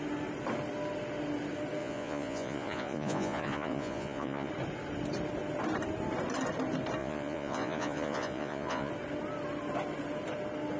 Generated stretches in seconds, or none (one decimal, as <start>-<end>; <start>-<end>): 1.8-4.5; 7.0-8.9